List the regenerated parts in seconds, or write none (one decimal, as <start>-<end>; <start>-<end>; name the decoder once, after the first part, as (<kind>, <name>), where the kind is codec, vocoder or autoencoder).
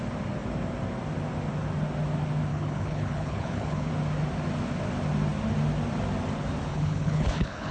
2.5-3.9 (codec, HILCodec); 6.7-7.7